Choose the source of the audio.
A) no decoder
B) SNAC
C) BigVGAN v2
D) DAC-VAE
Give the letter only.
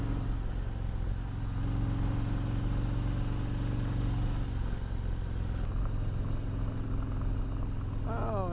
A